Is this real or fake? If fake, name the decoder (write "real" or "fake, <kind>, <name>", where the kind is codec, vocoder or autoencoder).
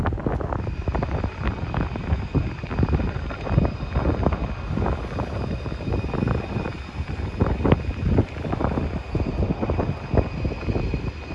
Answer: real